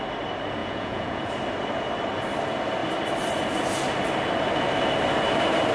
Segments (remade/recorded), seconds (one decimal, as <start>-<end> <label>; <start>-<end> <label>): 0.0-0.6 recorded; 0.6-1.3 remade; 1.3-5.7 recorded